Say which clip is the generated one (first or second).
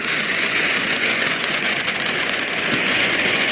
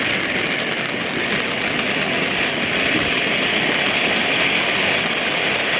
first